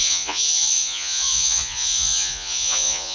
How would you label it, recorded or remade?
remade